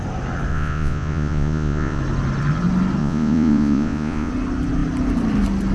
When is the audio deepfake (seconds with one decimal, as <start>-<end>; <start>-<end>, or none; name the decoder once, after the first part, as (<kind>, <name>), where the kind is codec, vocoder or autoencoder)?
0.5-2.0 (vocoder, Vocos); 3.0-4.3